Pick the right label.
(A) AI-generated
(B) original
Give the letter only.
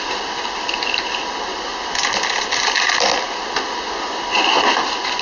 B